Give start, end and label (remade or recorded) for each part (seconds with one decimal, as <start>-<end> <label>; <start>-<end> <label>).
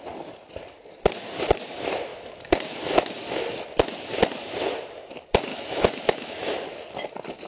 0.0-2.1 recorded; 2.1-3.4 remade; 3.4-5.5 recorded; 5.5-6.5 remade; 6.5-7.5 recorded